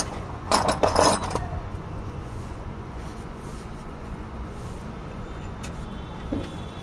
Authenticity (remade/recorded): remade